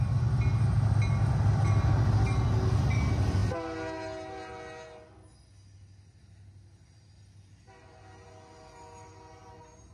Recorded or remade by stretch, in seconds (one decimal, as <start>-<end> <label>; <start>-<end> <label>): 0.0-9.9 recorded

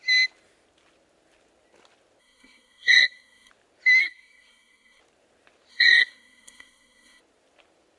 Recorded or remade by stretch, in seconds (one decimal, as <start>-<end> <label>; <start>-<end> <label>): 0.0-2.2 recorded; 2.2-3.5 remade; 3.5-4.0 recorded; 4.0-5.0 remade; 5.0-5.7 recorded; 5.7-7.2 remade; 7.2-8.0 recorded

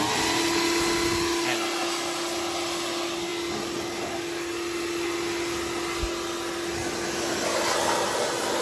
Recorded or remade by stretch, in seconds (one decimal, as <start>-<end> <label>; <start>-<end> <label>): 0.0-8.6 recorded

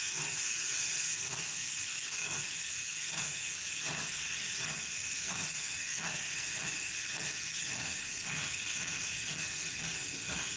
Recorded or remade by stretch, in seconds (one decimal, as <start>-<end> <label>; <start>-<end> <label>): 0.0-10.6 remade

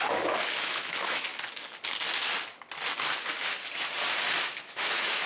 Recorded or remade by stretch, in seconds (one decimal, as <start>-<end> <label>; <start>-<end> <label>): 0.0-1.3 remade; 1.3-4.4 recorded; 4.4-5.3 remade

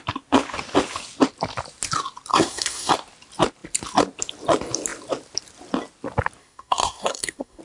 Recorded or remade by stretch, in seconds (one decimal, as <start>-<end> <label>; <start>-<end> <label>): 0.0-2.3 recorded; 2.3-2.9 remade; 2.9-6.4 recorded; 6.4-7.6 remade

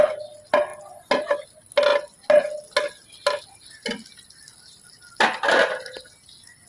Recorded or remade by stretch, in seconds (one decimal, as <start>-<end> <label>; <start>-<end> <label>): 0.0-6.7 recorded